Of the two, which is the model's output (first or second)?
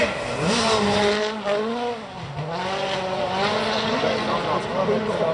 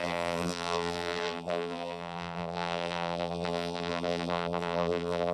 second